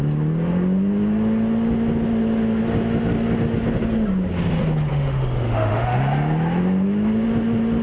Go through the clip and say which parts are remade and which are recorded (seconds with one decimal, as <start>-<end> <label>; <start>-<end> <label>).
0.0-4.9 recorded; 4.9-6.0 remade; 6.0-7.8 recorded